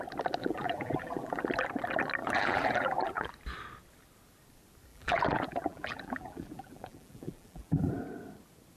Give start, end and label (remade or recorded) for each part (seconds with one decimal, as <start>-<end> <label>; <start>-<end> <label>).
0.0-0.4 recorded; 0.4-1.5 remade; 1.5-2.2 recorded; 2.2-3.3 remade; 3.3-4.9 recorded; 4.9-7.9 remade; 7.9-8.8 recorded